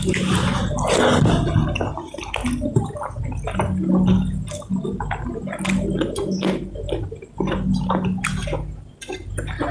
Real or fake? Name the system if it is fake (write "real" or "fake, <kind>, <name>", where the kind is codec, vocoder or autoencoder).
real